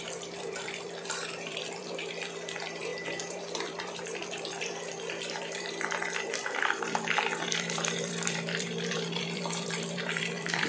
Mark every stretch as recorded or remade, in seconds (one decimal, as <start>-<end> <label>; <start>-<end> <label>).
0.0-10.7 remade